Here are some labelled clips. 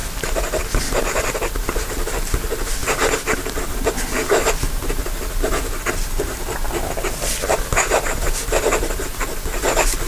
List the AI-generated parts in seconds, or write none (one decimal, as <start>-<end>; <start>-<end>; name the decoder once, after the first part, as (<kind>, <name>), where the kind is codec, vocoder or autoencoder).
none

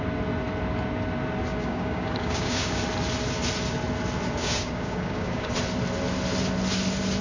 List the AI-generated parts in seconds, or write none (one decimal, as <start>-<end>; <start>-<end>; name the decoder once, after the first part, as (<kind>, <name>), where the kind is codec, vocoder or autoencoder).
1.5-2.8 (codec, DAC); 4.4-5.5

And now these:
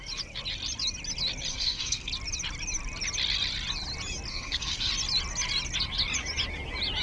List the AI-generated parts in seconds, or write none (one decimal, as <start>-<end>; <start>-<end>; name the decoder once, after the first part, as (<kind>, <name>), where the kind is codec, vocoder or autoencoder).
1.5-2.1 (codec, SNAC); 4.3-4.9

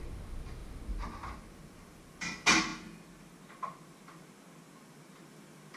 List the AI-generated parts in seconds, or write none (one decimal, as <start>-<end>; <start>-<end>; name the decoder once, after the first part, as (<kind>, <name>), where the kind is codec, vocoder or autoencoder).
none

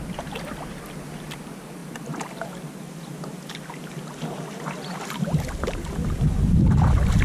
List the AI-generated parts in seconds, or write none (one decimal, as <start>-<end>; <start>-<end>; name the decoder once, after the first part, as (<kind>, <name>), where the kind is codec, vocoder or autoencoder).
none

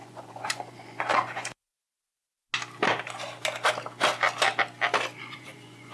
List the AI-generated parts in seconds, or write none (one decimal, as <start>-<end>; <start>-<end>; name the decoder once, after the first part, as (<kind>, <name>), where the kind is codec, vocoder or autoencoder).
0.0-1.7 (vocoder, Vocos); 5.2-5.9

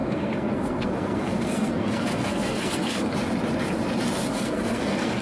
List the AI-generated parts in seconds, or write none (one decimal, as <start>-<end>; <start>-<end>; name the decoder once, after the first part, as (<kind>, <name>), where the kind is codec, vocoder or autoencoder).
0.0-3.1 (codec, SNAC); 4.3-5.2

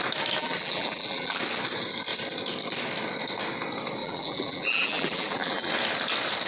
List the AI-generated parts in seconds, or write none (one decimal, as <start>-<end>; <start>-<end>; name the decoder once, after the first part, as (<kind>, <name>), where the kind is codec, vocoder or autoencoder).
0.4-1.4 (vocoder, BigVGAN v2); 4.0-5.7